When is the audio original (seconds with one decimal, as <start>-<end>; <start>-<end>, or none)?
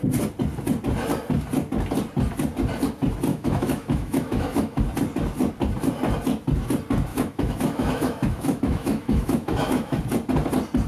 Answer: 0.0-3.3; 4.8-7.1; 10.0-10.9